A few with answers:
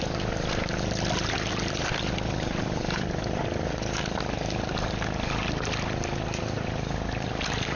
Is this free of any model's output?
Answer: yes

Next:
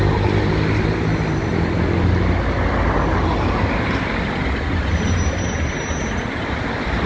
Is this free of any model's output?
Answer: yes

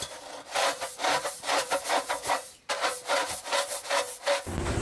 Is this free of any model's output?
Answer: yes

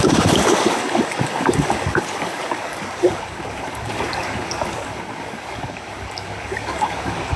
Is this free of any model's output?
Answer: no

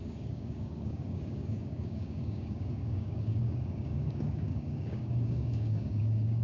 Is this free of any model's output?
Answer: no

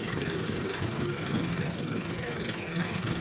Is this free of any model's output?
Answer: no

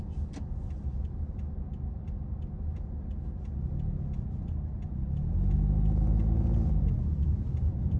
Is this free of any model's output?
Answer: yes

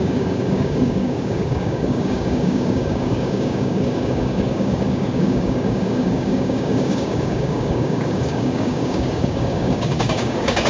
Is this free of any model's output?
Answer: no